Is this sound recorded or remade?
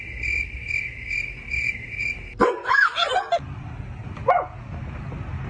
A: recorded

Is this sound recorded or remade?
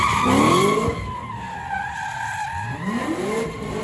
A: recorded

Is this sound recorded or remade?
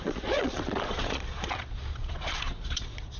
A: remade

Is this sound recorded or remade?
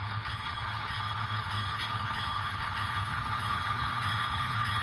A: remade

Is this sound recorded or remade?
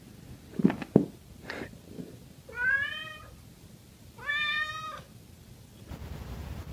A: recorded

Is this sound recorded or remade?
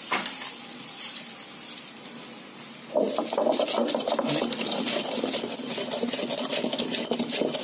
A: recorded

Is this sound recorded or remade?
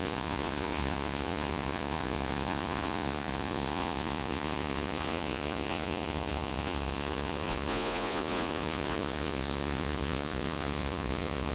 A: remade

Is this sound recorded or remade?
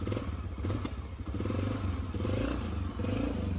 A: recorded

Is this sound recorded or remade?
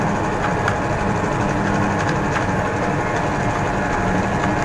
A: recorded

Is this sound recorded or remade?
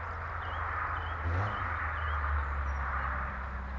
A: recorded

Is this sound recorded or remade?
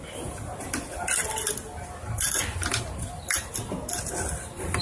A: recorded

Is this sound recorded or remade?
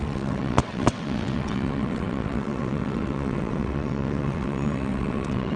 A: remade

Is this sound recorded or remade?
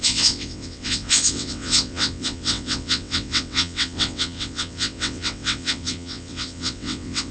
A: remade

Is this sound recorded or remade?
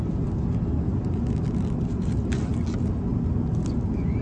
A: recorded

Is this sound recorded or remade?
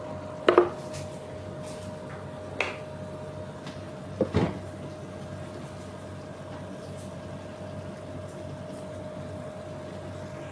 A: recorded